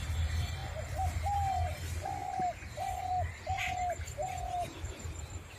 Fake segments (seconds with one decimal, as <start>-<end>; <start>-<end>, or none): 0.6-1.5; 2.2-5.6